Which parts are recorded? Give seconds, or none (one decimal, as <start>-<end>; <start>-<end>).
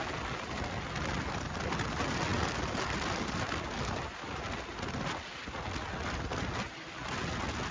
0.0-7.7